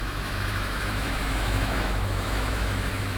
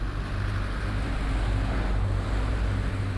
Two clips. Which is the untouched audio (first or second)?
second